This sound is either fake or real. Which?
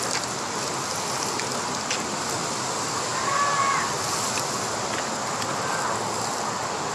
real